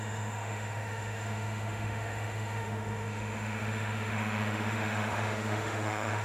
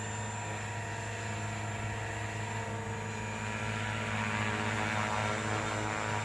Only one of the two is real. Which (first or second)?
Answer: second